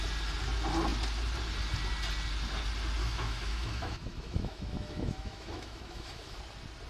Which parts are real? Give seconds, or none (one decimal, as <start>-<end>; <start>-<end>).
0.0-3.0; 6.4-6.9